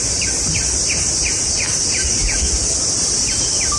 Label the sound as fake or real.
real